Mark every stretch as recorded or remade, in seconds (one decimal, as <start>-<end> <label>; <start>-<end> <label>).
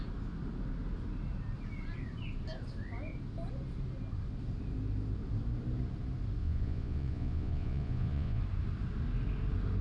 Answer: 0.0-6.4 recorded; 6.4-8.4 remade; 8.4-9.8 recorded